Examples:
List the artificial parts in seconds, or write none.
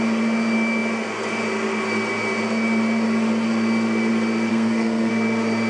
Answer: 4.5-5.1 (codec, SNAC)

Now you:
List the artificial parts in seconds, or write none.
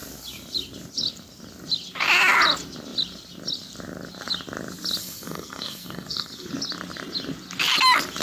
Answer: 5.0-6.5 (codec, SNAC)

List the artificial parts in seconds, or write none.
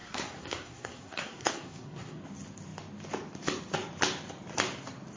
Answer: 0.0-2.2 (codec, SNAC)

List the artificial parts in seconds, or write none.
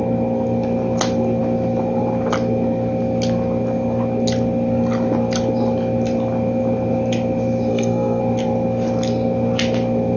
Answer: 7.7-8.2 (codec, SNAC)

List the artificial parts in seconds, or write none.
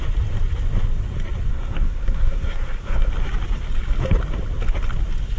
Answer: 1.5-3.1 (codec, SNAC)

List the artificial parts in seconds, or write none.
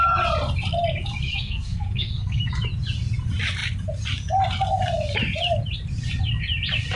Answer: 1.3-2.5 (codec, SNAC)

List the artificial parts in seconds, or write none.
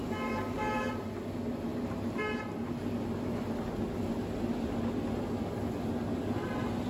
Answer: none